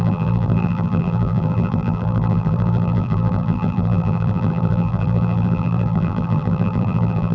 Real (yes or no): no